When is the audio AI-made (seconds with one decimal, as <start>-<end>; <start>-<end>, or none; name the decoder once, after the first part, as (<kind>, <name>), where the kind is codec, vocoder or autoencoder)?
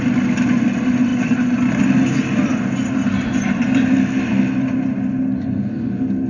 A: none